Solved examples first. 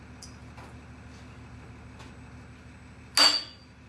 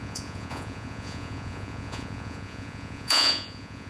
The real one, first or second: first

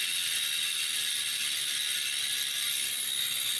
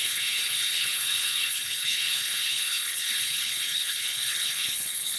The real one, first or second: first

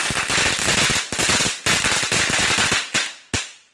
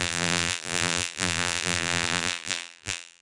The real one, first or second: first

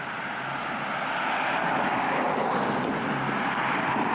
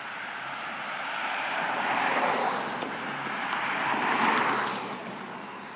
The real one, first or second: first